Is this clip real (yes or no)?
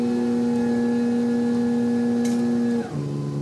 yes